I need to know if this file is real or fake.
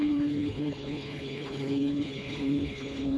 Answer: fake